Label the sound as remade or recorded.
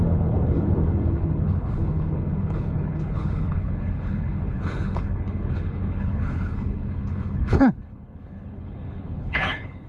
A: remade